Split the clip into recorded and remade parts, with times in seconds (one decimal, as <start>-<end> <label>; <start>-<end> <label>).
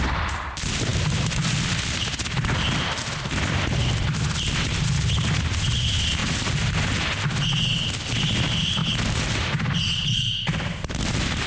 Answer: 0.0-11.5 recorded